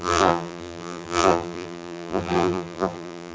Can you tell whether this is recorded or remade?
remade